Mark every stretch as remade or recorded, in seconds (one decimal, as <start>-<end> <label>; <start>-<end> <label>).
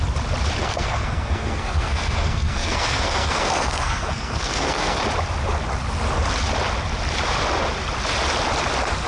0.0-0.6 recorded; 0.6-5.0 remade; 5.0-9.1 recorded